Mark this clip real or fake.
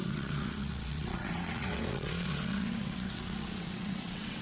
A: fake